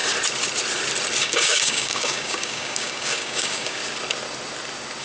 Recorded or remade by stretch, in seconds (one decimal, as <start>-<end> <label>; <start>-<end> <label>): 0.0-1.2 recorded; 1.2-3.8 remade; 3.8-5.0 recorded